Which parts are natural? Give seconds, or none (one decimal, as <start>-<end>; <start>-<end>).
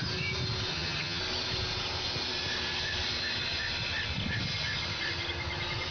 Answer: 0.0-0.7; 1.2-5.9